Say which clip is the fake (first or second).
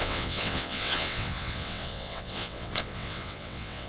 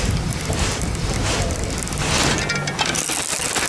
first